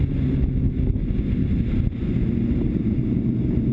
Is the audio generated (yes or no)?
no